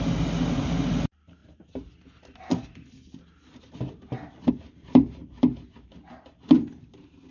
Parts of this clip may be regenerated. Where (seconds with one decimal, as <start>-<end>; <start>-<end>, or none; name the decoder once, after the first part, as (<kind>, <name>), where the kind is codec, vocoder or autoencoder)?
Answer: 0.0-1.4 (vocoder, BigVGAN v2); 4.5-5.2; 6.8-7.3